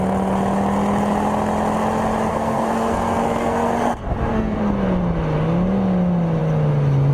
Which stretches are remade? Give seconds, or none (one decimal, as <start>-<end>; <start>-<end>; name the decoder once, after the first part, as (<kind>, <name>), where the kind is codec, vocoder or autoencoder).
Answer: 2.3-4.6 (codec, SNAC)